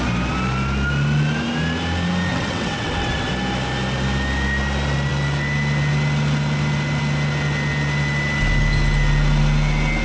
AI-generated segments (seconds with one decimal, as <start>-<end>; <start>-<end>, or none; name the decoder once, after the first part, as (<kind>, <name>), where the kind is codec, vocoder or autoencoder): 2.3-3.3 (vocoder, WaveNeXt)